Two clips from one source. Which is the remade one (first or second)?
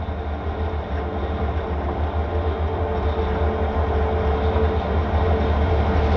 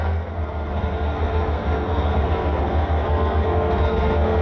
second